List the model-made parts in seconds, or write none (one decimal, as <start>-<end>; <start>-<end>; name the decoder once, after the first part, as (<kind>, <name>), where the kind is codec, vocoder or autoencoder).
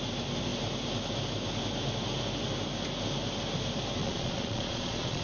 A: 4.0-5.2 (vocoder, Vocos)